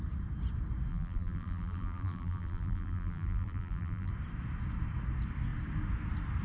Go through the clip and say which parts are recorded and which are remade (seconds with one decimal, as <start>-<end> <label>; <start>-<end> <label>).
0.0-0.9 recorded; 0.9-4.1 remade; 4.1-6.4 recorded